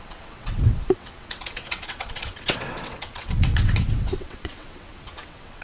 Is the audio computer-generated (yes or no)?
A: yes